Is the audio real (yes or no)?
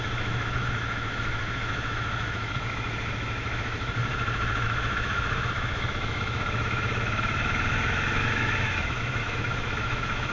no